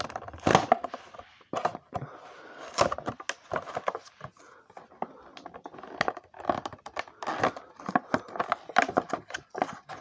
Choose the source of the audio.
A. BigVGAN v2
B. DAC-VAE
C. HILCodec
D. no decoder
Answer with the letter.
D